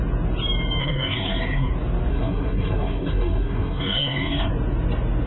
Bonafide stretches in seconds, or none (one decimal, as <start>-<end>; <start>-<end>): 0.0-0.8; 1.7-2.1; 4.5-5.3